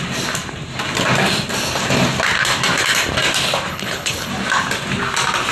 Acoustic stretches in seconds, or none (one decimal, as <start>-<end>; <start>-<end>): 0.0-3.7; 4.3-5.5